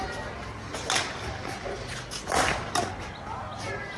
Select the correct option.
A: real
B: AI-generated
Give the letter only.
A